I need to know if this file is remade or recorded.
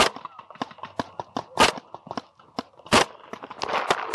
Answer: recorded